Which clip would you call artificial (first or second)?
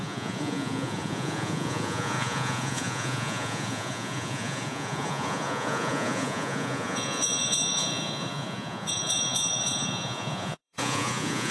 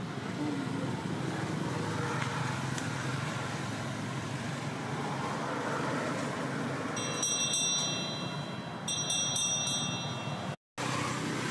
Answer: first